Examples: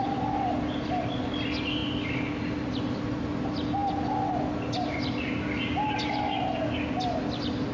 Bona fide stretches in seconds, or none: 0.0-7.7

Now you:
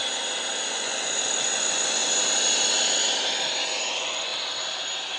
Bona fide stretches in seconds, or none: 0.0-0.7; 2.0-3.9; 4.3-5.2

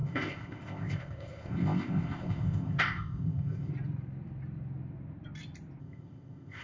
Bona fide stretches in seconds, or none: 3.7-5.8